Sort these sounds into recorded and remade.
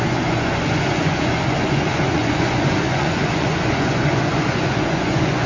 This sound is remade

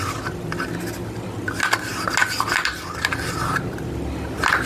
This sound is recorded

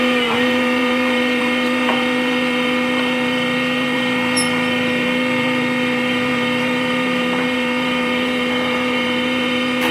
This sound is remade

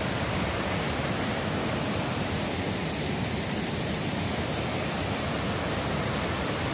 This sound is recorded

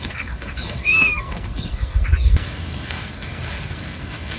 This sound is remade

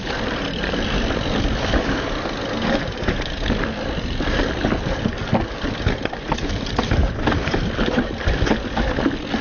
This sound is recorded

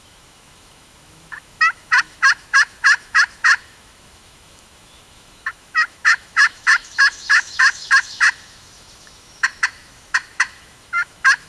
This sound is remade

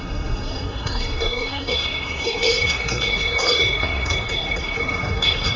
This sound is remade